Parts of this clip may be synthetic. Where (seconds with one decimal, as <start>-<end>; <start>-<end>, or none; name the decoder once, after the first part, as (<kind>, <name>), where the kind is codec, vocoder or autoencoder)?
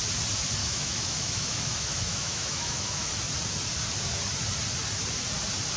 0.6-3.1 (autoencoder, DAC-VAE)